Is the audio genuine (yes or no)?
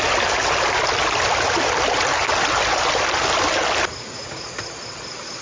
yes